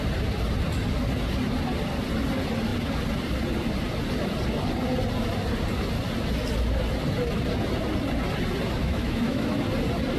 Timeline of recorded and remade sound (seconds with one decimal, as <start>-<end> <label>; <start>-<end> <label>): 0.0-8.8 recorded; 8.8-9.6 remade; 9.6-10.2 recorded